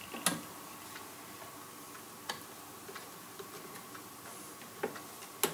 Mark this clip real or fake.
real